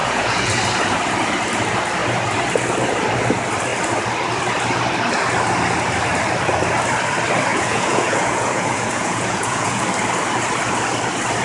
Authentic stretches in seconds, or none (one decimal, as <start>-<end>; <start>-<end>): 0.5-7.5; 9.8-11.4